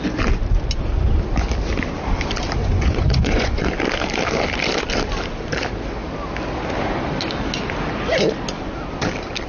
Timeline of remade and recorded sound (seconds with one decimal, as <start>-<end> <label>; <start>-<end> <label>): 0.0-2.6 recorded; 2.6-3.7 remade; 3.7-9.5 recorded